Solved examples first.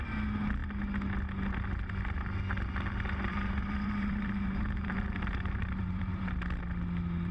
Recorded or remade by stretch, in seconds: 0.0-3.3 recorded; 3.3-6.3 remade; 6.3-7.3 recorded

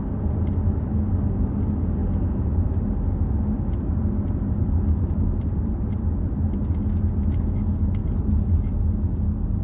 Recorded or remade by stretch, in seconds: 0.0-2.0 recorded; 2.0-2.7 remade; 2.7-4.6 recorded; 4.6-6.4 remade; 6.4-8.0 recorded; 8.0-8.5 remade; 8.5-9.6 recorded

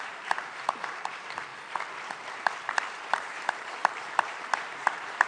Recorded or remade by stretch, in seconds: 0.0-1.5 remade; 1.5-2.6 recorded; 2.6-5.3 remade

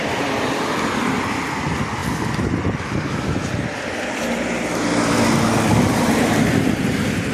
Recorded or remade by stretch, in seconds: 0.0-2.0 remade; 2.0-6.4 recorded; 6.4-7.3 remade

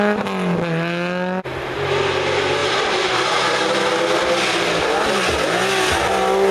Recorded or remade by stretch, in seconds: 0.0-2.6 recorded; 2.6-4.0 remade; 4.0-6.5 recorded